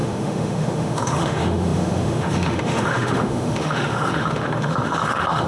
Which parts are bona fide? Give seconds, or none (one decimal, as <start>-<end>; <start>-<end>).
none